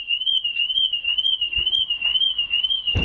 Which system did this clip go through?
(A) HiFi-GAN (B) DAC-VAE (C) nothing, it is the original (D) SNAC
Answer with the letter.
C